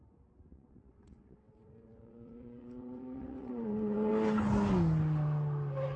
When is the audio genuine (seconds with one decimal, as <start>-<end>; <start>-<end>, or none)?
0.0-0.5; 4.1-6.0